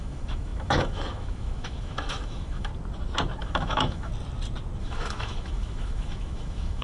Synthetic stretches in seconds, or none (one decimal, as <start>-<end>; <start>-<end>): 0.0-2.7; 3.4-4.1; 4.8-6.8